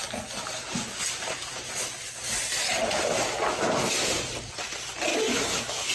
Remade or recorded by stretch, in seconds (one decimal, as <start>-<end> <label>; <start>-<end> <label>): 0.0-5.1 recorded; 5.1-5.9 remade